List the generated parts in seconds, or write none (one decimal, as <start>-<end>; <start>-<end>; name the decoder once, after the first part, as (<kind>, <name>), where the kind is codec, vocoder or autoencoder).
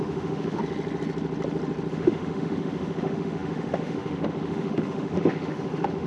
0.0-0.6 (autoencoder, DAC-VAE); 1.9-6.1